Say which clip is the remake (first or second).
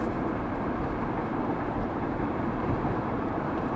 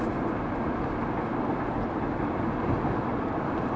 first